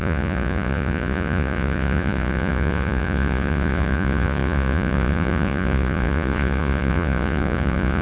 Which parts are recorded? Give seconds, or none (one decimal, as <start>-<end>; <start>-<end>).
none